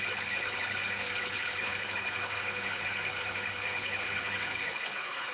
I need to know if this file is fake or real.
fake